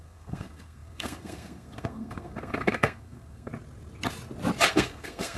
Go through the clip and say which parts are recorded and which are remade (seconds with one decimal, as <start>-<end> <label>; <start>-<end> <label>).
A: 0.0-3.5 remade; 3.5-4.7 recorded; 4.7-5.4 remade